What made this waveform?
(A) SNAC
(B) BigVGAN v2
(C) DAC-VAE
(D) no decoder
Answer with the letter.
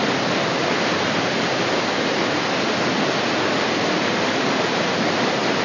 D